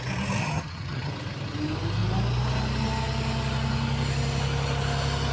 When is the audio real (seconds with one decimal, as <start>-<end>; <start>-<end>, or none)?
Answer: 0.0-0.4; 1.1-5.3